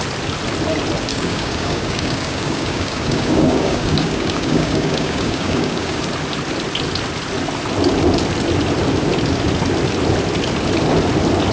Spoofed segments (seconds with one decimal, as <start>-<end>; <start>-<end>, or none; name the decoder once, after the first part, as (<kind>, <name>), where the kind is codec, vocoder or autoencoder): 1.1-6.0 (codec, DAC)